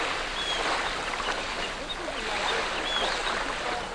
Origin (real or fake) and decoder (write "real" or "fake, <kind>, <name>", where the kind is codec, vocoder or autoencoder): real